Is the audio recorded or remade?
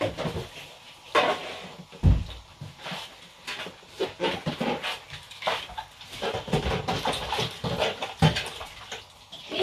recorded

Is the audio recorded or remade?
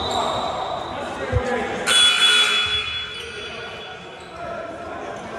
recorded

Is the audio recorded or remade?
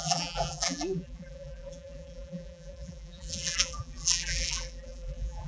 remade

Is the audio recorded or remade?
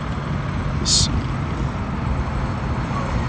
recorded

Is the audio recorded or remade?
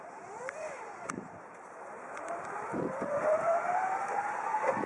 remade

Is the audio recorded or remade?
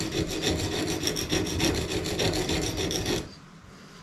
recorded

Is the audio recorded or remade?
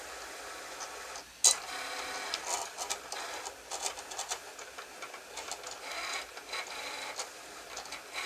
recorded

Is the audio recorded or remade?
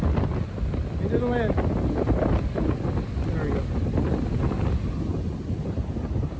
recorded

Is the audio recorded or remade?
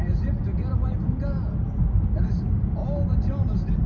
recorded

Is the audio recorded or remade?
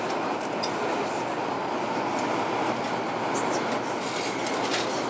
recorded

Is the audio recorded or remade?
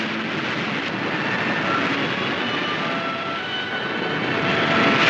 recorded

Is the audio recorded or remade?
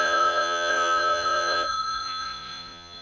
remade